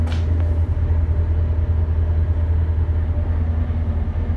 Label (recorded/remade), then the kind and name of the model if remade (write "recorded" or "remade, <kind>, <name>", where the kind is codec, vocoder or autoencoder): recorded